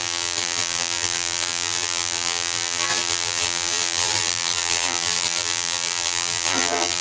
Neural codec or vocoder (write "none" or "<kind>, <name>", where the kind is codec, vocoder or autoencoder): vocoder, BigVGAN v2